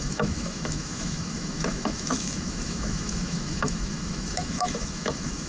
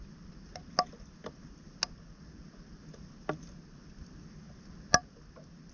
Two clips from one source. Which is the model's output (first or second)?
first